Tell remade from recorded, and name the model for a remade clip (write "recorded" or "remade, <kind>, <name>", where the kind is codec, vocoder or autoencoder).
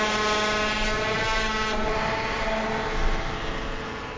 recorded